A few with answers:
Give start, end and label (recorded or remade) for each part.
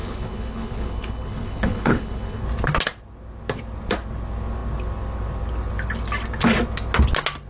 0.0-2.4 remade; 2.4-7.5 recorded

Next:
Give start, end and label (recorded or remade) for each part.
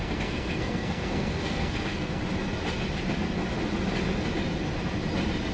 0.0-2.2 remade; 2.2-5.5 recorded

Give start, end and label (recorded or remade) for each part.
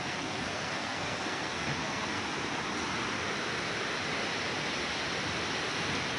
0.0-2.2 remade; 2.2-6.2 recorded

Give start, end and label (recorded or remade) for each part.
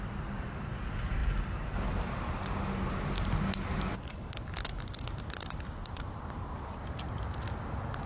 0.0-8.1 recorded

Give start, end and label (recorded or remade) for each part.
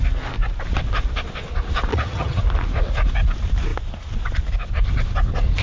0.0-1.9 recorded; 1.9-2.4 remade; 2.4-5.6 recorded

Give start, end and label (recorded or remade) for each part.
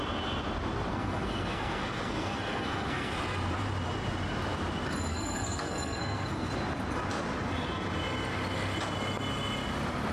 0.0-0.9 recorded; 0.9-3.1 remade; 3.1-5.1 recorded; 5.1-6.5 remade; 6.5-10.1 recorded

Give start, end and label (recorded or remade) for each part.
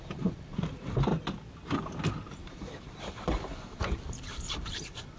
0.0-1.1 remade; 1.1-2.3 recorded; 2.3-5.2 remade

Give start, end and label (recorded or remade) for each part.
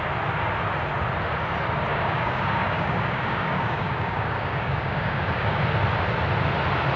0.0-1.9 recorded; 1.9-5.6 remade; 5.6-7.0 recorded